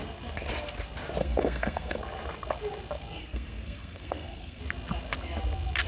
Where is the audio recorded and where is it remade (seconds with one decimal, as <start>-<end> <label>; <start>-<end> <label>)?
0.0-1.2 recorded; 1.2-2.0 remade; 2.0-3.2 recorded; 3.2-4.6 remade; 4.6-5.9 recorded